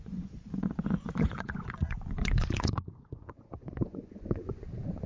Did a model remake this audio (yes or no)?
yes